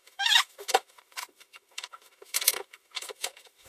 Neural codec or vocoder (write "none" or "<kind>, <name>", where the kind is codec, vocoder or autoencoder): autoencoder, DAC-VAE